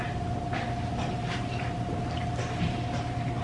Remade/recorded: recorded